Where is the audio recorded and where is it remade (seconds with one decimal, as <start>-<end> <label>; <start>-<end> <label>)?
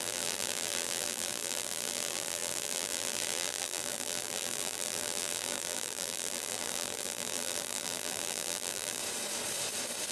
0.0-9.0 remade; 9.0-10.1 recorded